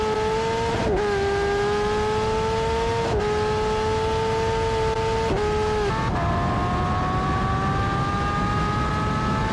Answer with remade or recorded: recorded